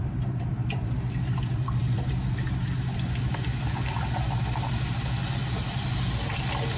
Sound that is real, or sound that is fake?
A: real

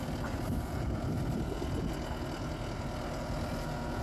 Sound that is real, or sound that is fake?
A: real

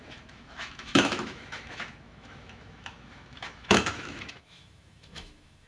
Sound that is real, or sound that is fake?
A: fake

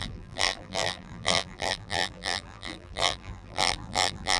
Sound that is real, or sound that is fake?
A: fake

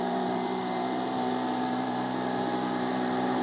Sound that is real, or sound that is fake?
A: fake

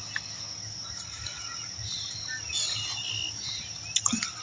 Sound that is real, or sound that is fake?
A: real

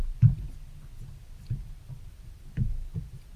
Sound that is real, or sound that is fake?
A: real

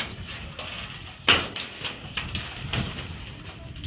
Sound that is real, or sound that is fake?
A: real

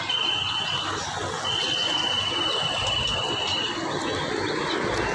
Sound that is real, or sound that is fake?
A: real